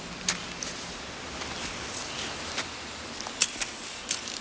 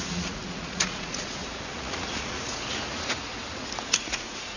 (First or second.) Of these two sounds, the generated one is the second